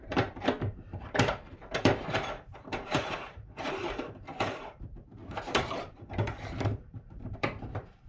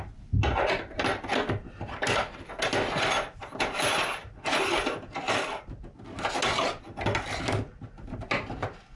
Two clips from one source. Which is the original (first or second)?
second